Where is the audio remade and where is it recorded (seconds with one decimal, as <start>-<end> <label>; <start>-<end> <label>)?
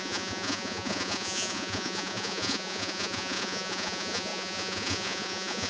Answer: 0.0-5.7 remade